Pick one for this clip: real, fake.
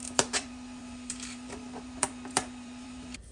fake